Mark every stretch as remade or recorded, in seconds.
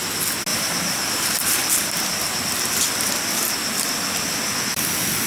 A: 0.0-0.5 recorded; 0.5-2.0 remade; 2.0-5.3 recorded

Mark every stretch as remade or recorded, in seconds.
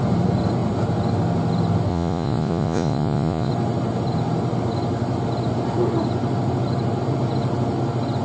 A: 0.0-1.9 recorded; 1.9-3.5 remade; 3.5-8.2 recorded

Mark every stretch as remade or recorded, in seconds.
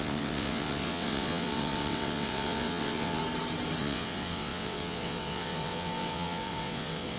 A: 0.0-3.2 remade; 3.2-3.8 recorded; 3.8-7.2 remade